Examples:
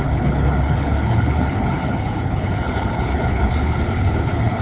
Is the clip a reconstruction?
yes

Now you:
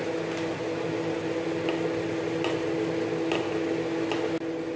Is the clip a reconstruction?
no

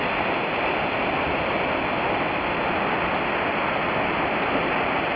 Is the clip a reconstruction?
no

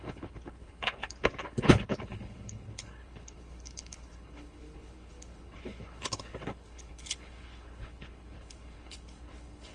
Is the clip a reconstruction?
yes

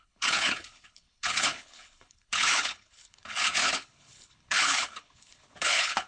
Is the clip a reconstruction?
yes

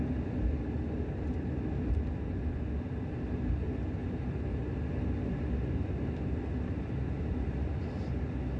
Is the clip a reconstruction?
no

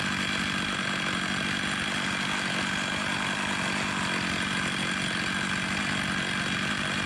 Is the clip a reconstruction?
no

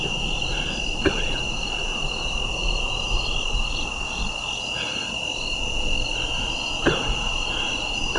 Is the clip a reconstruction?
no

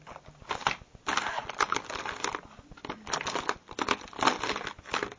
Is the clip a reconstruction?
no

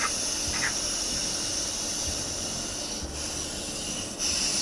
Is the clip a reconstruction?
no